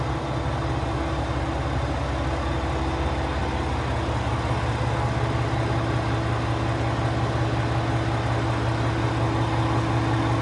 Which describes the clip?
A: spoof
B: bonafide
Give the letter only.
B